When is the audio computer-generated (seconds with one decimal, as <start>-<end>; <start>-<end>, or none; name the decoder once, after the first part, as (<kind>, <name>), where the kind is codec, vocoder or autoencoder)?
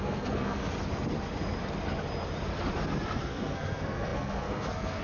0.0-0.6 (codec, SNAC); 3.2-5.0